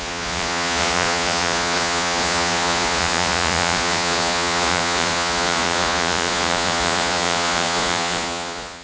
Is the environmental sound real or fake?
fake